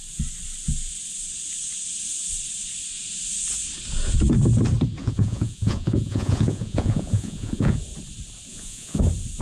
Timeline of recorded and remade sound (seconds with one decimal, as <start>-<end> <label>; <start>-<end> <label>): 0.0-5.0 recorded; 5.0-7.8 remade; 7.8-8.5 recorded; 8.5-9.0 remade; 9.0-9.4 recorded